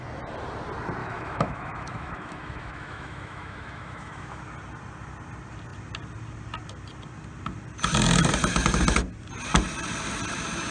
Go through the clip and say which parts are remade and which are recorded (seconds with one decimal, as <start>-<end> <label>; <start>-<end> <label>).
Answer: 0.0-1.0 recorded; 1.0-4.4 remade; 4.4-10.7 recorded